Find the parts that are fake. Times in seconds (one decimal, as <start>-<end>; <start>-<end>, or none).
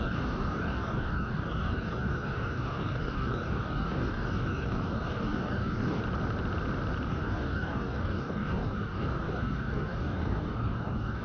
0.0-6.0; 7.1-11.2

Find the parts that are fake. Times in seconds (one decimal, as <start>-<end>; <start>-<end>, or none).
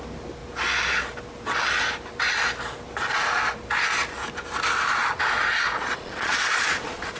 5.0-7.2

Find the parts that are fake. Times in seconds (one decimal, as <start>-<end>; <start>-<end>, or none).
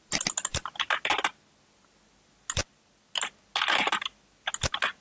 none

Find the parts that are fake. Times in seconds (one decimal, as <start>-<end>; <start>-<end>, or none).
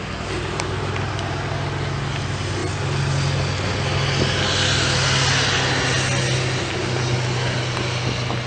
none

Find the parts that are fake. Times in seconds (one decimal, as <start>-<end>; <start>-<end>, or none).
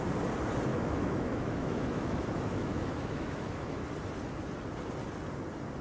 0.7-3.9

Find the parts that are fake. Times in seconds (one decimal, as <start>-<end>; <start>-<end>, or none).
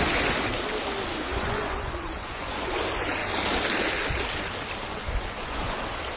1.1-2.8; 4.9-5.8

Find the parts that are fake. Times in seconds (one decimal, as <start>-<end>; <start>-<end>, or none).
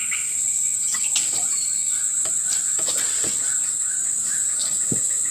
none